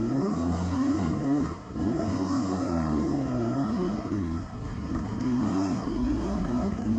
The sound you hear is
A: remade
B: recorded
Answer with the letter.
A